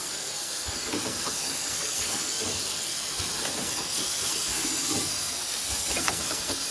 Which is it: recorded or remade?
remade